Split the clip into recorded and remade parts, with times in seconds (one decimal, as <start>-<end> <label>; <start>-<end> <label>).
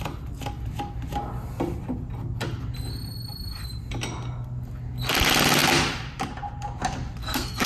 0.0-7.2 recorded; 7.2-7.7 remade